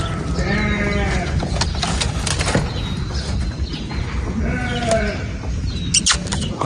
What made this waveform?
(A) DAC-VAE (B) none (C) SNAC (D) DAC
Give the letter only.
B